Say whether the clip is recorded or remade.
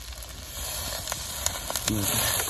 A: recorded